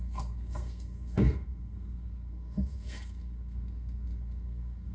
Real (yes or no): no